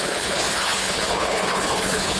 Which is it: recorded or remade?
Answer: remade